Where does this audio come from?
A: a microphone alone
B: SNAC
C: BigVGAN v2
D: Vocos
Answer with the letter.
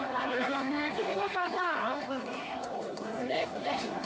B